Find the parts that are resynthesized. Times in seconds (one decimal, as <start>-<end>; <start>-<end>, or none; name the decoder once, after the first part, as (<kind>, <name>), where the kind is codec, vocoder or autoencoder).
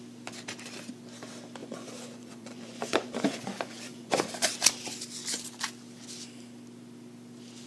1.6-4.5 (vocoder, Vocos)